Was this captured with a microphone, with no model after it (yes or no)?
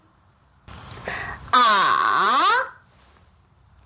no